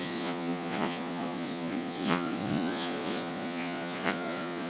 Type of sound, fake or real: fake